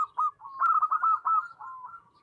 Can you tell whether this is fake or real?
real